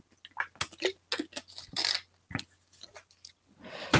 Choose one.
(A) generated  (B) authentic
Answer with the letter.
B